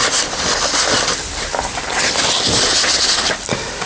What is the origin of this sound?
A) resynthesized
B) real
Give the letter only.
B